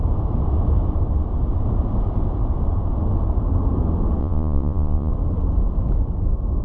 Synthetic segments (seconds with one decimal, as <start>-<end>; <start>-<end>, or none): 4.2-5.1